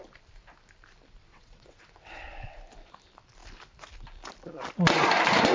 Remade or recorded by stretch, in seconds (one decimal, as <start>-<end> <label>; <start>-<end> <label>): 0.0-1.2 recorded; 1.2-2.6 remade; 2.6-5.5 recorded